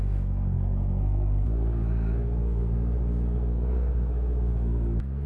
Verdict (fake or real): fake